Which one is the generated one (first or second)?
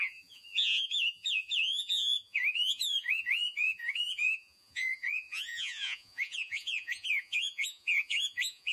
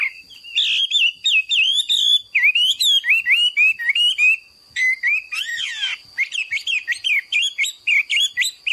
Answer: first